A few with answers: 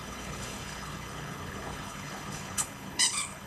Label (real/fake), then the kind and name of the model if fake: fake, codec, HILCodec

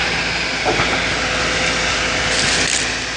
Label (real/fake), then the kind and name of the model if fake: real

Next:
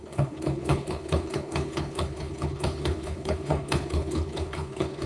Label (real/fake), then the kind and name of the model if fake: fake, codec, HILCodec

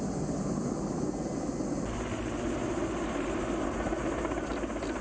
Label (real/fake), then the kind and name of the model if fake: real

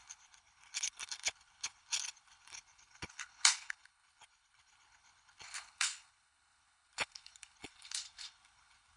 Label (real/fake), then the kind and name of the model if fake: fake, codec, HILCodec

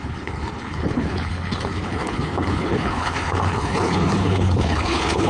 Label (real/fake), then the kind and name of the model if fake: fake, codec, HILCodec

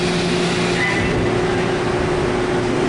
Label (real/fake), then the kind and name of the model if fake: real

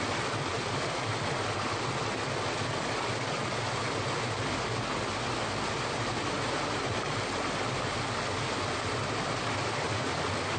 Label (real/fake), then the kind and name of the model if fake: real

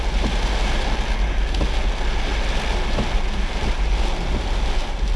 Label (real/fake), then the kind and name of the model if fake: real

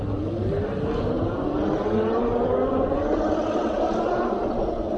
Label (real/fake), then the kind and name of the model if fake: real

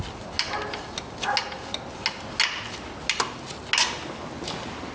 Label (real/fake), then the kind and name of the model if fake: real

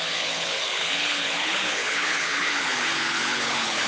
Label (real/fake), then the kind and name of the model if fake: fake, codec, HILCodec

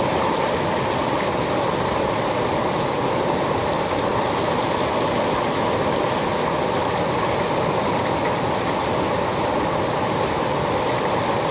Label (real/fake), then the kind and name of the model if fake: real